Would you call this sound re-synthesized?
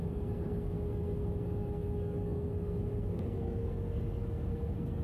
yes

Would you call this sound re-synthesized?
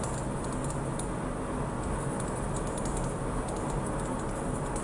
no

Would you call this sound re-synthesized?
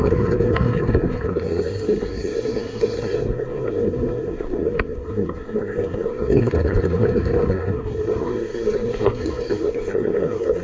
yes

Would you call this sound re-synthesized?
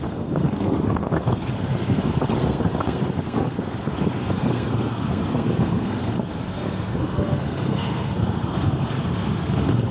yes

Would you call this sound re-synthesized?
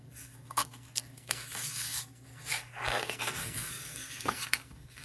yes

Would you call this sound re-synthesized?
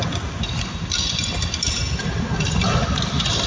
no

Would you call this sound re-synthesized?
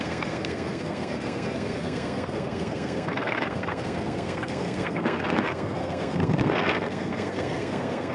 yes